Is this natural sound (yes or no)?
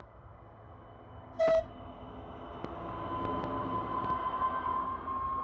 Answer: yes